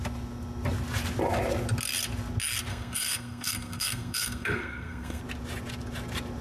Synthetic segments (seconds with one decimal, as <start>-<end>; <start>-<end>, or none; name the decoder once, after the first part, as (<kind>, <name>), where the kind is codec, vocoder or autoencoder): 2.7-5.2 (codec, SNAC)